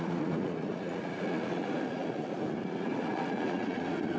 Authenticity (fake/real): fake